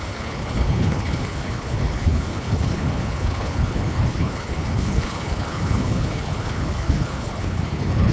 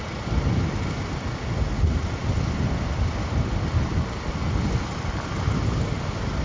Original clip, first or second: second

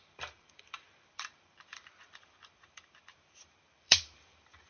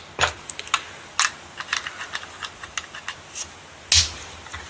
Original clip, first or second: second